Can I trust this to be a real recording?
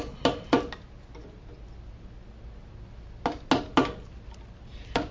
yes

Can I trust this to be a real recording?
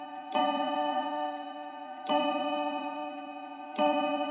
no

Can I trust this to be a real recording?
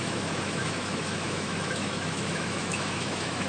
no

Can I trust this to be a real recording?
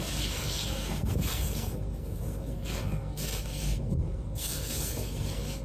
no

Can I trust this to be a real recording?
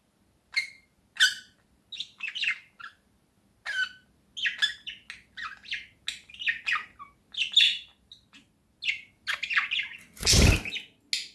yes